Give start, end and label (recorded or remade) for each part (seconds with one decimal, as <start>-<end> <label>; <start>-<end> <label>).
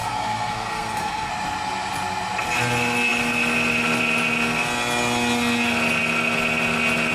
0.0-1.3 remade; 1.3-7.1 recorded